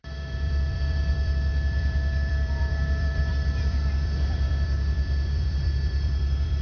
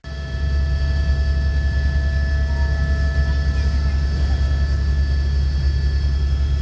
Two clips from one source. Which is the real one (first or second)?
second